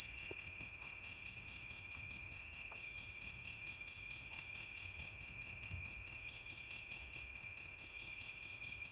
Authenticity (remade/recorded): remade